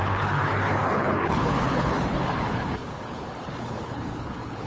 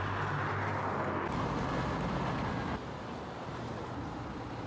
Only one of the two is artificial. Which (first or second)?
first